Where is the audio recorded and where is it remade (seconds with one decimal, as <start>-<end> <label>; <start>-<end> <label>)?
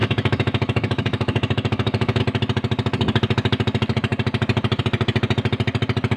0.0-2.2 remade; 2.2-6.2 recorded